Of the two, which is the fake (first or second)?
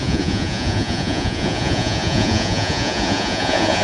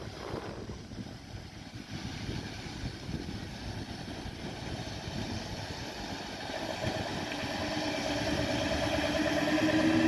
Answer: first